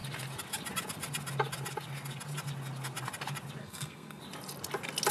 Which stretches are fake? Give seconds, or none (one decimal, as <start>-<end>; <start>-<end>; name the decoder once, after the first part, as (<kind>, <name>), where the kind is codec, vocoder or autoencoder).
3.6-4.2 (codec, SNAC)